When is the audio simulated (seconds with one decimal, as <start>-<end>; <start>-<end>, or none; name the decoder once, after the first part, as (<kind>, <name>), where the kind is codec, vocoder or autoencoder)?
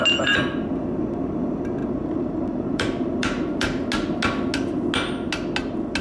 1.8-3.9 (vocoder, BigVGAN v2)